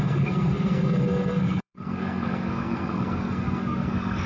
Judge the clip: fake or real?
fake